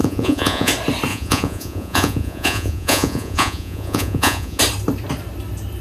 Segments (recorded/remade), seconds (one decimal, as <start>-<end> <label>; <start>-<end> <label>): 0.0-0.7 remade; 0.7-1.1 recorded; 1.1-4.6 remade; 4.6-5.8 recorded